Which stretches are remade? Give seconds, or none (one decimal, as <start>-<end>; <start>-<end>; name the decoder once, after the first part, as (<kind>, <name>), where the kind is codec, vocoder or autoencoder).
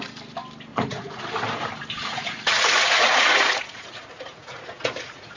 0.7-1.2 (vocoder, Vocos); 2.0-5.4